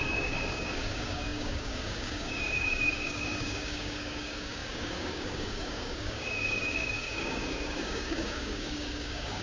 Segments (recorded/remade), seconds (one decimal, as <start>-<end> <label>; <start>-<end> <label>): 0.0-9.4 remade